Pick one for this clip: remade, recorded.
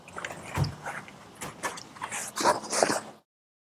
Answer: recorded